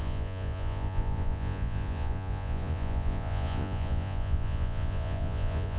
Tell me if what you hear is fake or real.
fake